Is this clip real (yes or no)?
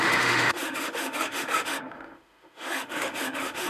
no